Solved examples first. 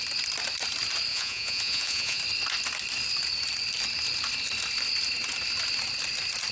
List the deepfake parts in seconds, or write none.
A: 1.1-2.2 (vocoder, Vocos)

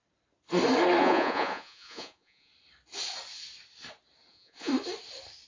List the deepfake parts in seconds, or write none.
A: 1.0-2.5 (vocoder, Vocos); 4.3-4.7

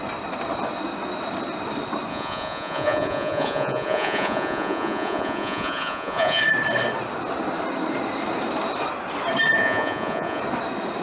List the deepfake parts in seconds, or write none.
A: 2.1-6.4 (vocoder, Vocos); 9.6-10.4

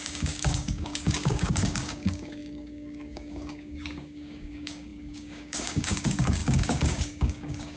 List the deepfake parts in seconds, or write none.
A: 0.0-7.8 (codec, DAC)